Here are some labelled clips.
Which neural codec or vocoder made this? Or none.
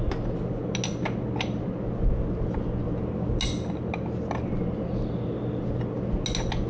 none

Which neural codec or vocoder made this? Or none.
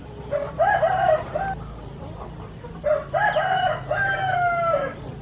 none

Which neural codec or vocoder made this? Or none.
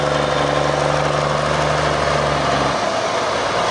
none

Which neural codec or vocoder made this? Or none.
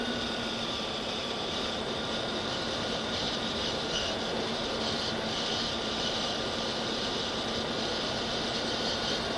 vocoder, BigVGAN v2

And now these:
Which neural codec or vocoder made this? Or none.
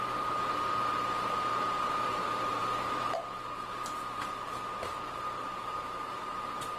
vocoder, BigVGAN v2